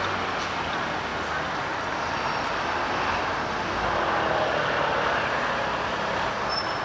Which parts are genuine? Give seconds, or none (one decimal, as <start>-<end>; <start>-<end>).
0.0-6.8